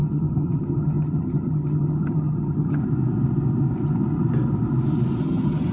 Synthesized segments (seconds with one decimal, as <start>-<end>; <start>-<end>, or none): 0.0-2.8; 5.2-5.7